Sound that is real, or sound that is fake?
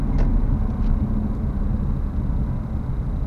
real